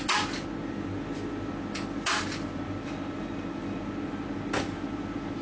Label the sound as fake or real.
real